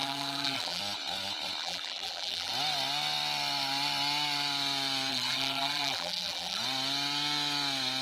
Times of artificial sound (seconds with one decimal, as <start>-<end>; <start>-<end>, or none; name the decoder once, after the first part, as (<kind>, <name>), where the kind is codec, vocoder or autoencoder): 0.0-0.8 (vocoder, BigVGAN v2); 1.6-2.5; 5.1-6.6